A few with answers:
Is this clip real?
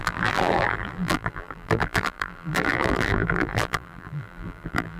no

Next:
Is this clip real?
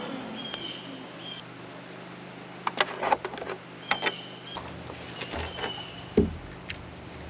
yes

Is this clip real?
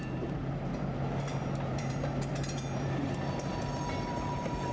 no